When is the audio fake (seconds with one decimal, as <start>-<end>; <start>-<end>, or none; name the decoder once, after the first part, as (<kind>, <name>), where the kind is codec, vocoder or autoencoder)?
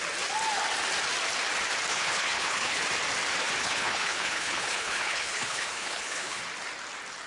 1.9-2.8 (codec, HILCodec); 3.6-6.4